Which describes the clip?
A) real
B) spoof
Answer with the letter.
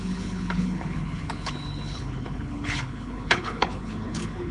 B